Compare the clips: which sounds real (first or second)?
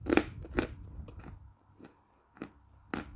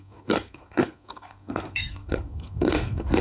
first